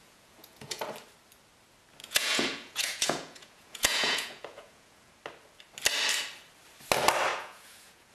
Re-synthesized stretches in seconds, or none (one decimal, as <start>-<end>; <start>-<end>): 0.0-0.8; 2.0-5.1; 7.3-8.1